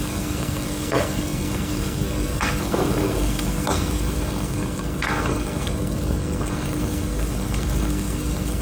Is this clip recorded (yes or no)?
no